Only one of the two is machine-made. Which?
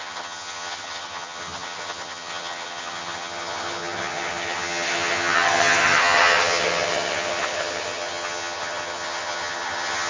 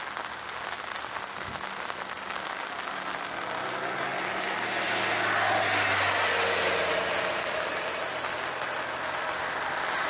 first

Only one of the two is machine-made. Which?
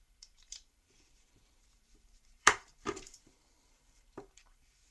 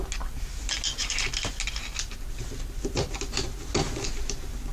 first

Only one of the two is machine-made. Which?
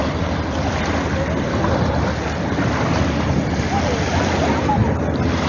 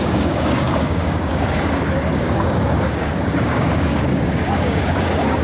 second